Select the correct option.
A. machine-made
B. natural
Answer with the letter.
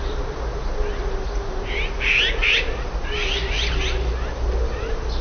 B